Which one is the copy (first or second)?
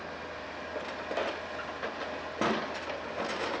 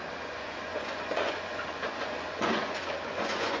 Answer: second